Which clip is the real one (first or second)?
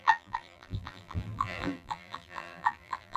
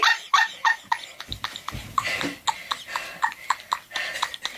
second